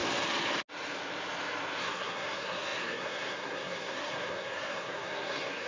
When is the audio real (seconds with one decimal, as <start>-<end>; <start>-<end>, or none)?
0.0-1.8